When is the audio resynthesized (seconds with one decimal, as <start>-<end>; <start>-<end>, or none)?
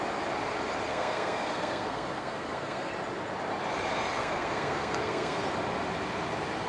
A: 0.9-2.9; 4.2-5.4